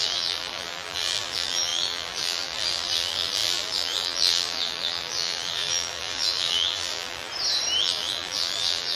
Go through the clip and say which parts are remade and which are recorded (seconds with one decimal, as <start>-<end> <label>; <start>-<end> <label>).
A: 0.0-7.3 remade; 7.3-7.8 recorded; 7.8-9.0 remade